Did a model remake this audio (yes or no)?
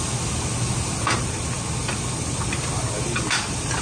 no